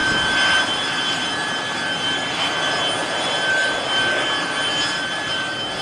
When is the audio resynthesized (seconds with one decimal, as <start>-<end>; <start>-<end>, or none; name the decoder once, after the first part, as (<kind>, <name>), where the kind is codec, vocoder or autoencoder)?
none